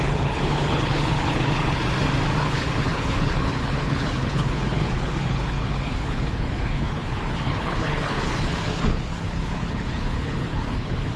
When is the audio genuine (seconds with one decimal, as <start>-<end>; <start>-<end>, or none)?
1.8-2.4